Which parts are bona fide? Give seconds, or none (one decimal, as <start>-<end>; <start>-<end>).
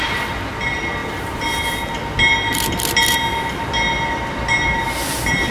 0.0-5.5